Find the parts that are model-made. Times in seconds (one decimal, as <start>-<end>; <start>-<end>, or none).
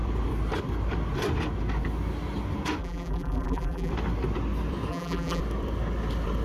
2.8-3.9; 4.9-5.4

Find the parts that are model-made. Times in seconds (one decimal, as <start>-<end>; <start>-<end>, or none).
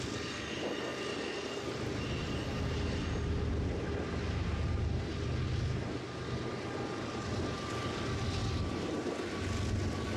none